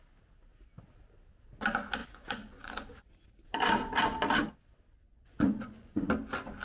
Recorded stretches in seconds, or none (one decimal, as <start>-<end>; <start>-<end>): 0.0-2.0; 2.7-5.1; 6.0-6.6